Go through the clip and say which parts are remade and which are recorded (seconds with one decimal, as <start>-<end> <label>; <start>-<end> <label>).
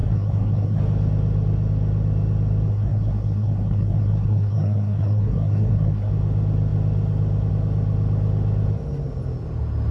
0.0-0.8 remade; 0.8-2.7 recorded; 2.7-6.1 remade; 6.1-9.9 recorded